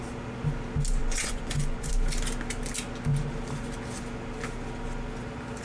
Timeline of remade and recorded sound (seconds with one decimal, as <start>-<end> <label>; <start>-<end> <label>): 0.0-1.0 recorded; 1.0-1.9 remade; 1.9-5.6 recorded